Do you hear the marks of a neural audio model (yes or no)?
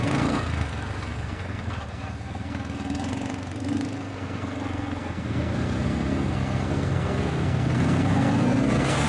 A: yes